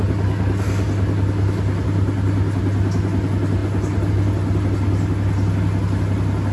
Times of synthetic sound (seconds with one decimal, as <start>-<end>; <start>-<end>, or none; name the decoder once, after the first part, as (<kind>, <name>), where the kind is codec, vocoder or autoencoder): none